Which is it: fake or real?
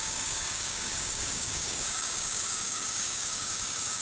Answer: fake